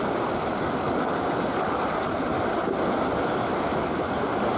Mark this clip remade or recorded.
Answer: recorded